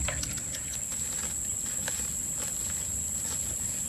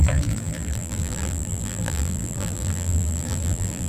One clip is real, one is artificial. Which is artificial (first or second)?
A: second